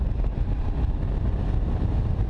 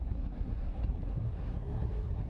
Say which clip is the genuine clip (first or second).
first